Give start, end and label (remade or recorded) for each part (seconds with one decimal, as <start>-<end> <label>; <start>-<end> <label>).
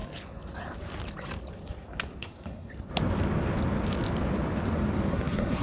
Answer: 0.0-2.2 recorded; 2.2-2.7 remade; 2.7-5.1 recorded; 5.1-5.6 remade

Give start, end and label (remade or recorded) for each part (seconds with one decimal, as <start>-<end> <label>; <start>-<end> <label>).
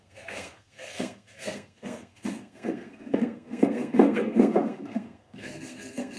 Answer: 0.0-6.2 remade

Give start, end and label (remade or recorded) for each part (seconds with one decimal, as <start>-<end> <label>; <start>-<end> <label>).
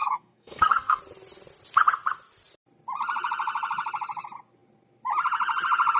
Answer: 0.0-1.0 remade; 1.0-6.0 recorded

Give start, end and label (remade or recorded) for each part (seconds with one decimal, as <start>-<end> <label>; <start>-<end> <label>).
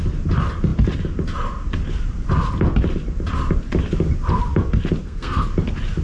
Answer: 0.0-5.0 recorded; 5.0-5.5 remade; 5.5-6.0 recorded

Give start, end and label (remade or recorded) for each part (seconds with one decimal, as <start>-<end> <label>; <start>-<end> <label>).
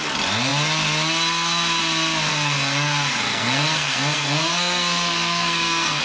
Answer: 0.0-2.3 recorded; 2.3-6.0 remade